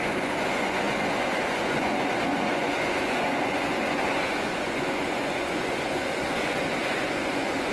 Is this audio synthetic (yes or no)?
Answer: yes